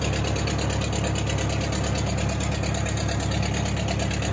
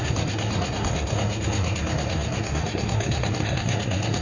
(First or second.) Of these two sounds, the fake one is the second